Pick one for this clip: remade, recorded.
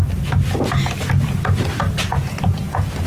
recorded